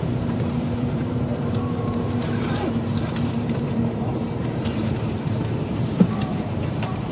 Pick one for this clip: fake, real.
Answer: fake